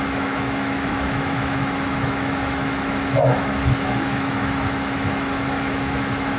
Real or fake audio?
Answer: fake